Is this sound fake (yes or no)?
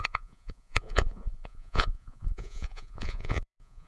yes